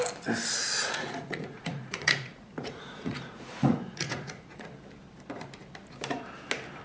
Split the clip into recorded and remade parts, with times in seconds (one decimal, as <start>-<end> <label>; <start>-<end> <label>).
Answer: 0.0-0.8 recorded; 0.8-4.7 remade; 4.7-6.8 recorded